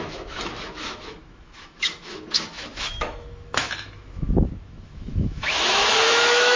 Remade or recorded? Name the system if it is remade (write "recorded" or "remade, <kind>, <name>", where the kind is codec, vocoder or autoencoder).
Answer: remade, autoencoder, DAC-VAE